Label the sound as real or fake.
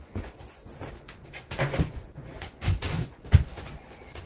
fake